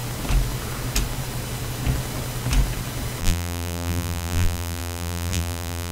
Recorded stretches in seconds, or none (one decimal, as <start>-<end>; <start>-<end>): 0.0-3.2